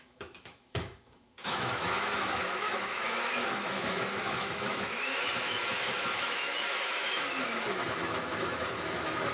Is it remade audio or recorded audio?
remade